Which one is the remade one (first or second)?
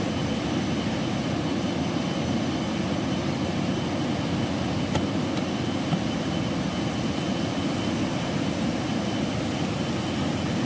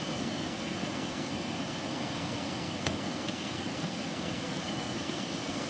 second